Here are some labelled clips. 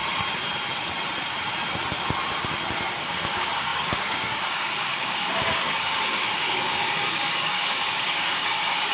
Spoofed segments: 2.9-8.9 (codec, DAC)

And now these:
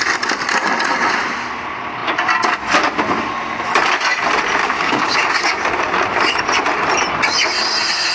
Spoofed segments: 4.6-5.6 (codec, DAC)

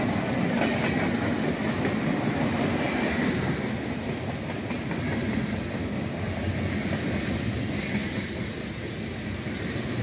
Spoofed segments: 5.8-6.3 (codec, DAC)

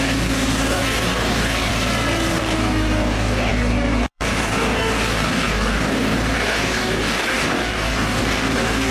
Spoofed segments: 0.0-1.7 (codec, DAC); 2.3-8.9